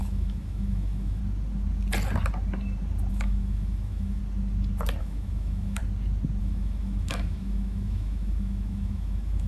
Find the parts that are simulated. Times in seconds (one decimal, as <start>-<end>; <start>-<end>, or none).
0.0-1.2; 3.1-4.2; 5.0-5.8; 6.4-9.5